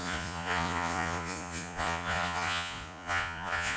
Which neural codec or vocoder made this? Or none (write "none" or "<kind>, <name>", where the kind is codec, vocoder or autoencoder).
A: vocoder, Vocos